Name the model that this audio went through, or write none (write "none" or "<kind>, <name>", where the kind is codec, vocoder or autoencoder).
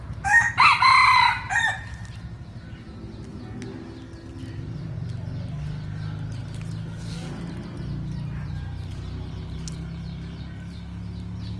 none